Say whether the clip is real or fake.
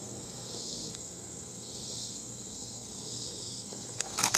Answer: fake